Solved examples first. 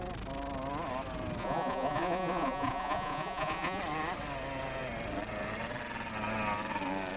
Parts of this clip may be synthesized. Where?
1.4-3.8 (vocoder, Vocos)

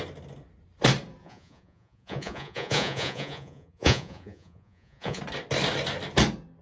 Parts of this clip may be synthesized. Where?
1.2-5.2 (vocoder, Vocos)

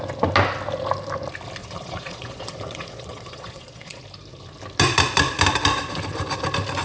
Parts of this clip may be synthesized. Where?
1.6-4.0 (vocoder, Vocos)

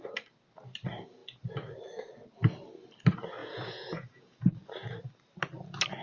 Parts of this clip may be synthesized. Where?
3.4-4.5 (vocoder, Vocos)

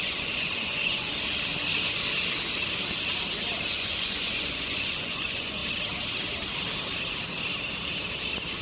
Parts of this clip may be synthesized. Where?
0.0-1.1 (vocoder, Vocos); 3.8-5.6

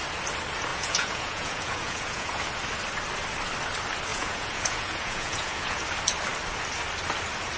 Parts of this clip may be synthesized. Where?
0.7-2.4 (vocoder, Vocos); 4.1-5.8

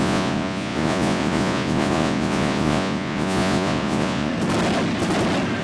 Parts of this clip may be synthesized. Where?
0.0-4.3 (vocoder, Vocos)

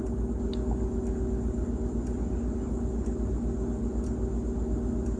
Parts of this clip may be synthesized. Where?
none